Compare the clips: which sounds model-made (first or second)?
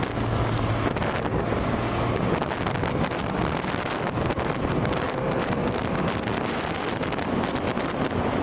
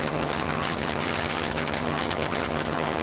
second